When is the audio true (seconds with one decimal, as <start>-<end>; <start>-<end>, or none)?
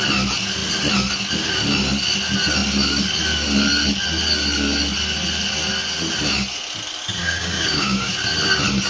0.0-7.2; 8.1-8.9